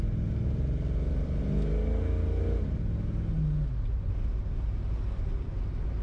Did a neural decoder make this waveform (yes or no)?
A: no